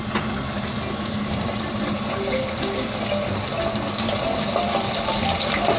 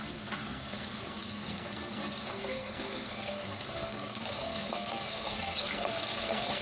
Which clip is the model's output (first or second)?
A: second